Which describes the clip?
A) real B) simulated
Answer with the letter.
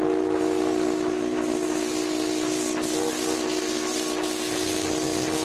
A